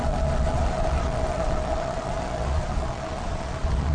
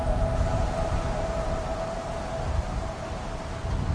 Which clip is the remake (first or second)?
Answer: first